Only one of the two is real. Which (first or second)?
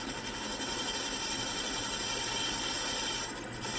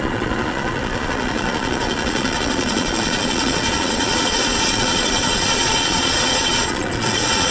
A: first